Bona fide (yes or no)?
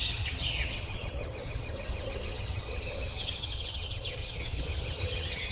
no